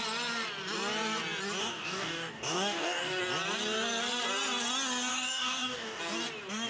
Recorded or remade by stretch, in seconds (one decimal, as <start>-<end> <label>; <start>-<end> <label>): 0.0-1.6 recorded; 1.6-3.2 remade; 3.2-5.1 recorded; 5.1-6.0 remade; 6.0-6.7 recorded